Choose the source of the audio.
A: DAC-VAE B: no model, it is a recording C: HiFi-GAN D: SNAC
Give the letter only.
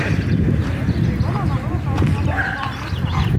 B